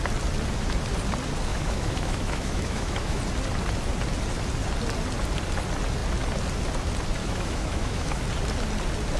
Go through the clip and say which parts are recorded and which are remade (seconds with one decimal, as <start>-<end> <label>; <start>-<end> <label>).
0.0-1.5 recorded; 1.5-3.2 remade; 3.2-7.2 recorded; 7.2-8.2 remade; 8.2-9.2 recorded